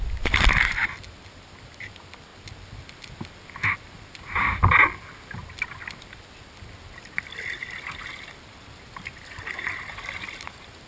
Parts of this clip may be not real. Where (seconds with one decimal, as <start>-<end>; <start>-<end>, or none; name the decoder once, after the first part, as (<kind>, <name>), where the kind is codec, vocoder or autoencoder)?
none